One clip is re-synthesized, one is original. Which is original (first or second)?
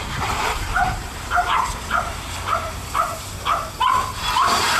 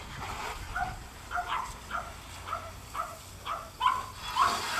second